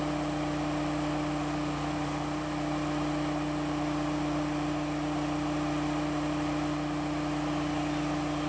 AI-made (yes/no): no